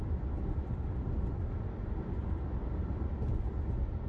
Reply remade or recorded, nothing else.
remade